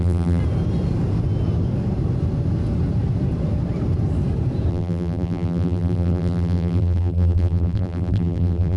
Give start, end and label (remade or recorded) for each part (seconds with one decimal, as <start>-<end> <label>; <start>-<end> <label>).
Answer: 0.0-0.4 remade; 0.4-4.7 recorded; 4.7-8.8 remade